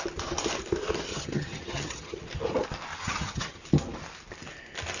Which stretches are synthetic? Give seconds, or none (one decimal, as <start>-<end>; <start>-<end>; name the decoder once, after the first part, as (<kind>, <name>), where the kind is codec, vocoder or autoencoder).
1.1-2.2 (vocoder, HiFi-GAN); 2.9-3.6